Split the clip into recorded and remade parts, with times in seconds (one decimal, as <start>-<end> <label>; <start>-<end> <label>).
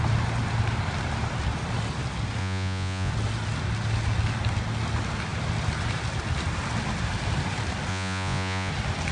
0.0-2.4 recorded; 2.4-3.1 remade; 3.1-7.9 recorded; 7.9-8.7 remade; 8.7-9.1 recorded